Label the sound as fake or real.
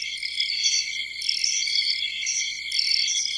real